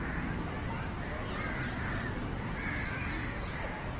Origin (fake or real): real